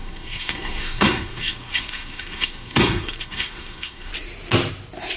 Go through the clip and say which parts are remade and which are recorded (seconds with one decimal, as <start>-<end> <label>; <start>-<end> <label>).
0.0-4.1 remade; 4.1-5.2 recorded